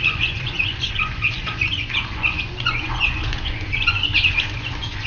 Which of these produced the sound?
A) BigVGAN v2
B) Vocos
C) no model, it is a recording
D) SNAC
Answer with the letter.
B